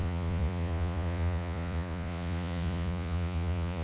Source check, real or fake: fake